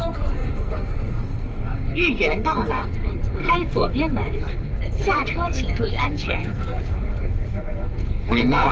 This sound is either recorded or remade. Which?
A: remade